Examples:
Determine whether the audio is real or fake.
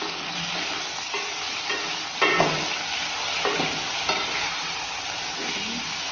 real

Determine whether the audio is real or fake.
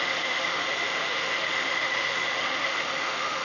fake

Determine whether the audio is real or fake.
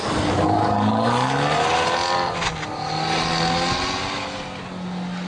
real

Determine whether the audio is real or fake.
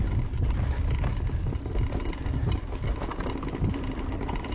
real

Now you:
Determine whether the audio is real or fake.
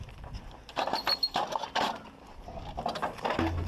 real